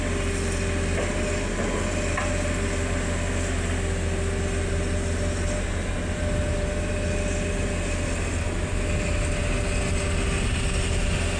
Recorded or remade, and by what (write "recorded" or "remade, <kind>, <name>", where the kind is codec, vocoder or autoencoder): recorded